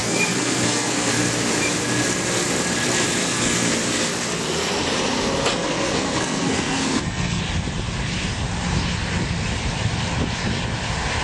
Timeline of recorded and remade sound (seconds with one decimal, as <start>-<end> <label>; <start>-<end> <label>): 0.0-1.1 remade; 1.1-3.2 recorded; 3.2-3.7 remade; 3.7-5.5 recorded; 5.5-7.4 remade; 7.4-11.2 recorded